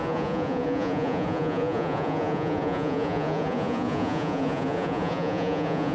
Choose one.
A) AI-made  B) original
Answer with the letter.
A